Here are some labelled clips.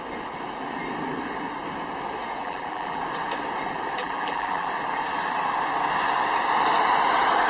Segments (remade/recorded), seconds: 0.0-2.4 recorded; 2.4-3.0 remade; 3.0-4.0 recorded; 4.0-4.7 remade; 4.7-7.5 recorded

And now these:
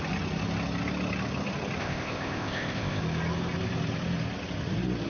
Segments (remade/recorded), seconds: 0.0-1.8 recorded; 1.8-3.0 remade; 3.0-5.1 recorded

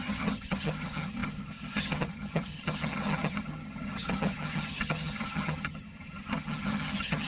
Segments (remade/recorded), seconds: 0.0-7.3 remade

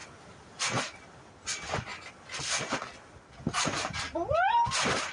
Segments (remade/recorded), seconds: 0.0-5.1 recorded

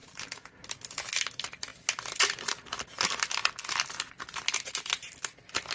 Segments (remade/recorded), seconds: 0.0-5.7 recorded

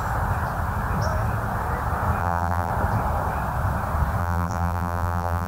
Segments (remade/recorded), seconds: 0.0-2.2 recorded; 2.2-2.7 remade; 2.7-4.2 recorded; 4.2-5.5 remade

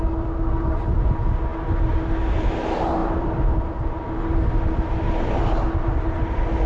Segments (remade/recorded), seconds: 0.0-6.7 recorded

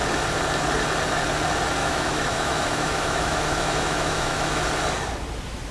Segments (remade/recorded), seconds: 0.0-1.8 recorded; 1.8-4.6 remade; 4.6-5.7 recorded